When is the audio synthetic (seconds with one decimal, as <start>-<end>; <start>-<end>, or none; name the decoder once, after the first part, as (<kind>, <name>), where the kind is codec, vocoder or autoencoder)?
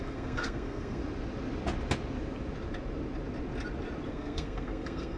0.0-1.0 (codec, SNAC); 4.1-5.2